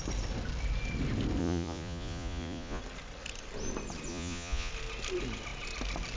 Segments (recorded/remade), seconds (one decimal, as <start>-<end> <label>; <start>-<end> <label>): 0.0-1.4 recorded; 1.4-2.8 remade; 2.8-4.1 recorded; 4.1-4.7 remade; 4.7-6.2 recorded